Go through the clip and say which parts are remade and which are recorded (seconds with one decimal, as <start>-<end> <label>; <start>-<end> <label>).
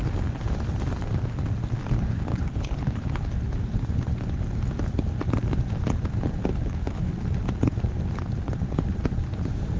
0.0-2.3 recorded; 2.3-3.3 remade; 3.3-6.5 recorded; 6.5-7.1 remade; 7.1-9.8 recorded